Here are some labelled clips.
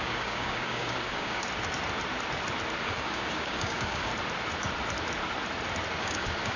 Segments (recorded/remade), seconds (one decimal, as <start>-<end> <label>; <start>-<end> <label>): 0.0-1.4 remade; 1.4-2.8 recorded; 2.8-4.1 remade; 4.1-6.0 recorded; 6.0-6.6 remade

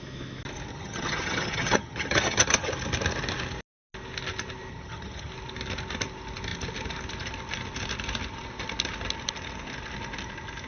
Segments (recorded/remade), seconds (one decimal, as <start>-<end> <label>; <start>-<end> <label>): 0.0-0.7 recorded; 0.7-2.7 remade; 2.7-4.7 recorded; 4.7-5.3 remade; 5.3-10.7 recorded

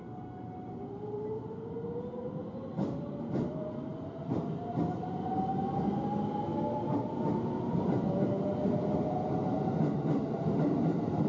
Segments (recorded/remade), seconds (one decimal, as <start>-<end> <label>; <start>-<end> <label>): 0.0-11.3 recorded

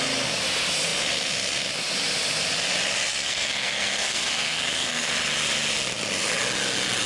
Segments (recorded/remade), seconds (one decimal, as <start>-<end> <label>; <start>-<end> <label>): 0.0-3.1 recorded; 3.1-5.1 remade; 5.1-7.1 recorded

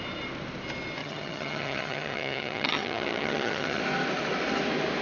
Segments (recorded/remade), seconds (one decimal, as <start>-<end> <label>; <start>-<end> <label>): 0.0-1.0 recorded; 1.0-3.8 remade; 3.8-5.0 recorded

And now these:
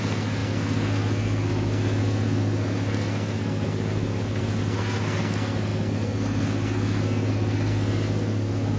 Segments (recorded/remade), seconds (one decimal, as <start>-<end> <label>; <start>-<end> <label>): 0.0-8.8 remade

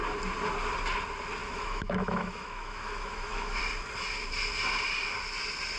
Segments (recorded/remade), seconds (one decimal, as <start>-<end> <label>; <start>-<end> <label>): 0.0-1.4 recorded; 1.4-3.6 remade; 3.6-5.8 recorded